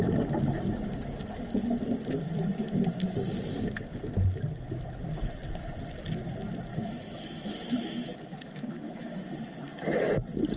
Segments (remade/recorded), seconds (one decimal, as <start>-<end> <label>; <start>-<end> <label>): 0.0-6.7 recorded; 6.7-10.1 remade; 10.1-10.6 recorded

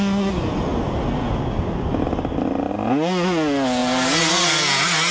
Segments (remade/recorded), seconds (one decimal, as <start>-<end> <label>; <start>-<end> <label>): 0.0-5.1 recorded

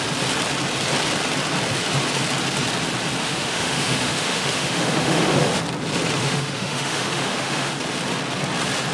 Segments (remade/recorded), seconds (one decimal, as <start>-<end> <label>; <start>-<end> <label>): 0.0-3.2 recorded; 3.2-5.6 remade; 5.6-6.2 recorded; 6.2-7.7 remade; 7.7-8.9 recorded

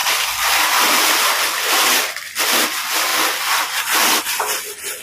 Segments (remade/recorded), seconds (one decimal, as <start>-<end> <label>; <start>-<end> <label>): 0.0-5.0 recorded